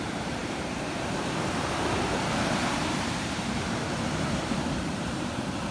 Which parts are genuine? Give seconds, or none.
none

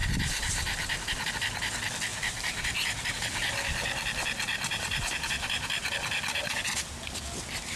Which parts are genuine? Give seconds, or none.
0.0-2.1; 6.8-7.8

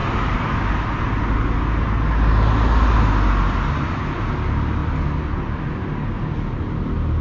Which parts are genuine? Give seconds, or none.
0.0-7.2

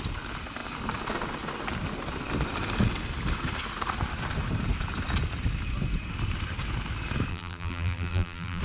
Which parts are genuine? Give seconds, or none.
0.0-7.3

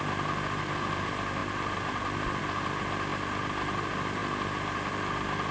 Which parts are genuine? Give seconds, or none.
0.0-5.5

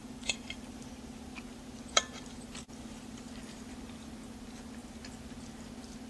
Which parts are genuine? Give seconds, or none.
3.7-6.1